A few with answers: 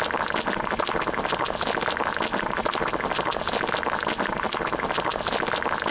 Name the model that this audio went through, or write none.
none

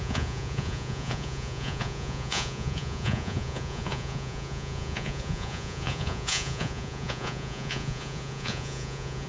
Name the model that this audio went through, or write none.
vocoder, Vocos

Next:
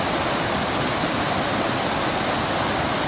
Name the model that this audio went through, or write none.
none